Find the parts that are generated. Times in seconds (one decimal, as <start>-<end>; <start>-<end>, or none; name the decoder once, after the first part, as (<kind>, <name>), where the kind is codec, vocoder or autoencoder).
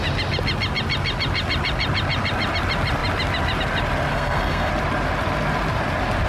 4.1-4.7 (codec, SNAC)